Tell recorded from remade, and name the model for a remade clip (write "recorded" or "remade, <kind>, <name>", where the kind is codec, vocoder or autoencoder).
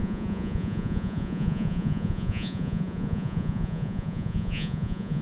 remade, vocoder, Vocos